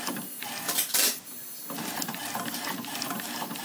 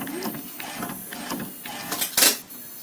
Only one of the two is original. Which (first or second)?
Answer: second